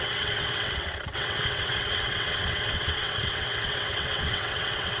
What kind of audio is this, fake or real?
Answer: fake